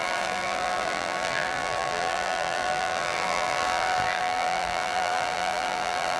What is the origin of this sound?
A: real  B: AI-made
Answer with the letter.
B